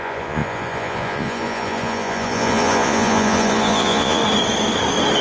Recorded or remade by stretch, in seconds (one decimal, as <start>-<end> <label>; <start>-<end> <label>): 0.0-4.2 remade; 4.2-5.2 recorded